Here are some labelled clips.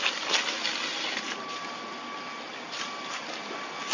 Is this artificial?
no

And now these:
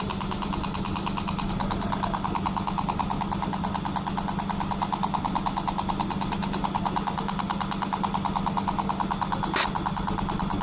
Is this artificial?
no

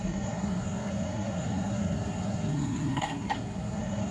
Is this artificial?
yes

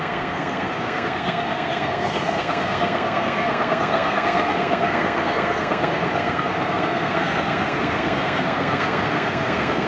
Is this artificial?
yes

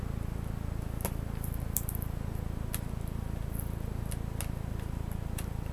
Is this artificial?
no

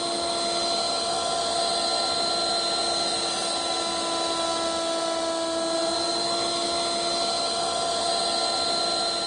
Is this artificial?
no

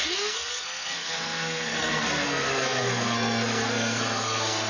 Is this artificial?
yes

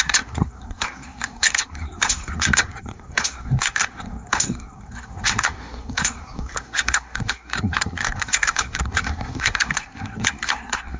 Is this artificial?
yes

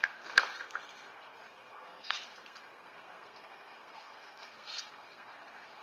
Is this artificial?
yes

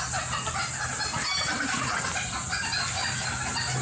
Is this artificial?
no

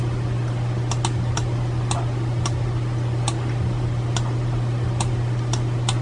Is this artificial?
no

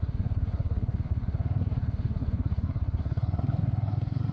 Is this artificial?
yes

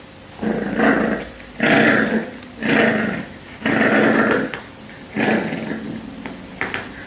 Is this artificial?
no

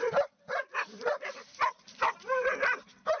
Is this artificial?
no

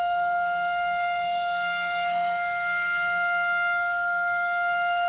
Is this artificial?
yes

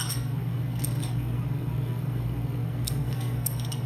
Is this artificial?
yes